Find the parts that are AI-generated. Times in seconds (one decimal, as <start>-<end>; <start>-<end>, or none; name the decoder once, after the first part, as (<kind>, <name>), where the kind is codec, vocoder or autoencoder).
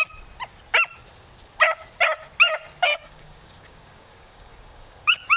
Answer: 2.9-5.4 (codec, DAC)